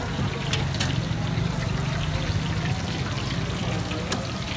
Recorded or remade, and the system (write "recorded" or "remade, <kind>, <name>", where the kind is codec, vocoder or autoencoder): recorded